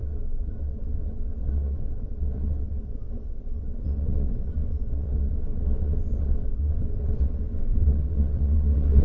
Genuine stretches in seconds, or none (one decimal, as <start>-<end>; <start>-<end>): none